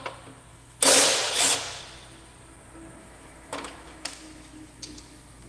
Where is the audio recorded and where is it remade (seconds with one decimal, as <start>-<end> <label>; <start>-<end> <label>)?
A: 0.0-0.5 recorded; 0.5-1.8 remade; 1.8-3.0 recorded; 3.0-5.5 remade